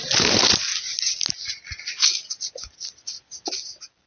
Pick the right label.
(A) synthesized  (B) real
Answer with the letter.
B